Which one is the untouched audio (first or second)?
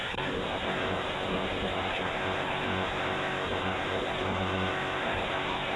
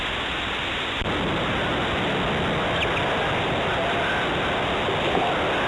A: second